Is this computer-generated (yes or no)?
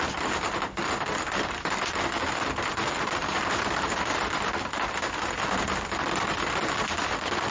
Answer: no